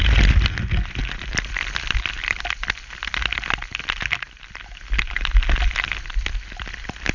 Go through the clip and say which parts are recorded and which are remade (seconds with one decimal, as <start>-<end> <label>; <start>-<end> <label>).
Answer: 0.0-7.1 recorded